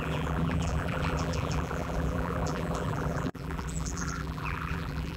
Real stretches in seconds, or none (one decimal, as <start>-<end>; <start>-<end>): none